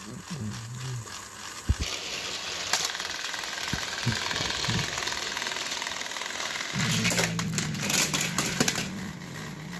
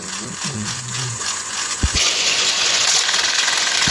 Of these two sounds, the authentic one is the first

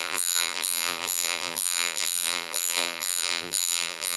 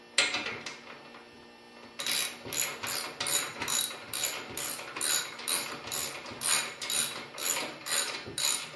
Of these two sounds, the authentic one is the second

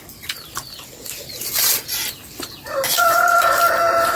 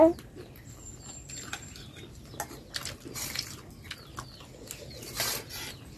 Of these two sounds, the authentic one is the second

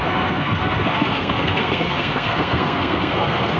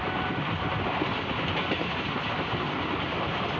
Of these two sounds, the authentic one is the second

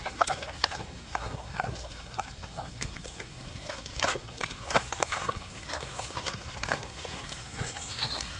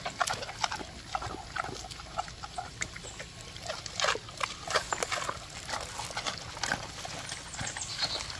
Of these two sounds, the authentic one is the second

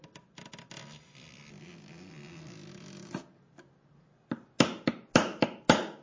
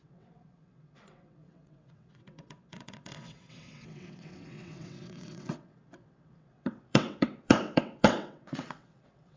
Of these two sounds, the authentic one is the first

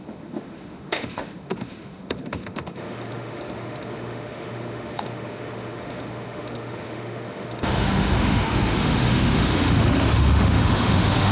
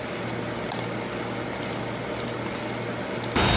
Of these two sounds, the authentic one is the second